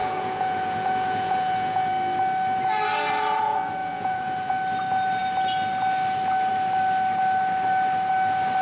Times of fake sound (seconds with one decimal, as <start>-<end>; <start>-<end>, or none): 0.0-1.9; 3.8-4.5

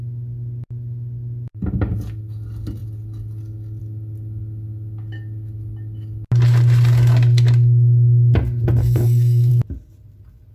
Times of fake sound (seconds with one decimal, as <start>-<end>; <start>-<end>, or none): 8.8-9.5

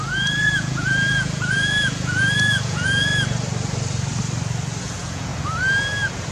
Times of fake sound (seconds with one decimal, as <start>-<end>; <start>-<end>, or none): 0.0-3.1; 4.8-5.3

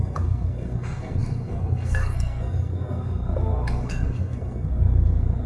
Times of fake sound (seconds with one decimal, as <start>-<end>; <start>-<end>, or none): 0.0-5.5

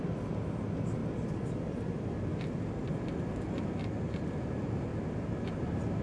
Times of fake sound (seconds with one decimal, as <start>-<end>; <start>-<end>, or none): 4.9-5.6

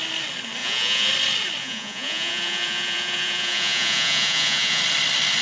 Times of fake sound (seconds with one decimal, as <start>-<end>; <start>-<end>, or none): 0.6-1.1; 1.6-4.8

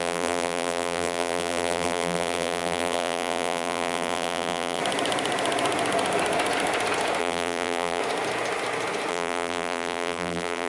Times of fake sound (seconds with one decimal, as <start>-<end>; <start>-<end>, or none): 0.0-4.8; 7.2-8.0; 9.1-10.7

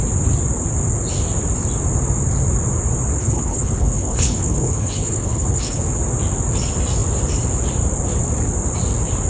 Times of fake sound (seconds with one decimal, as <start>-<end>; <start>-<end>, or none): 3.2-5.8